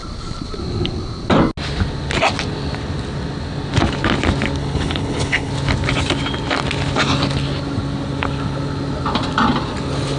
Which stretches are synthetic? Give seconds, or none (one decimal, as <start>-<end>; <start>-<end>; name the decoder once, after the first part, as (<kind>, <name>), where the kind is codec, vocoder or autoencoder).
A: 4.6-5.5 (codec, HILCodec)